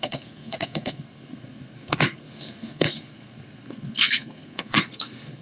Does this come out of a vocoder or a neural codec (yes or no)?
yes